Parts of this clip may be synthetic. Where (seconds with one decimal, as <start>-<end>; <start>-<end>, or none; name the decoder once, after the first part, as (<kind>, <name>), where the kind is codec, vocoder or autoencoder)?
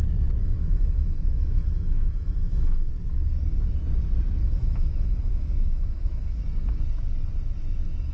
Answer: 0.4-2.9 (autoencoder, DAC-VAE); 4.4-6.4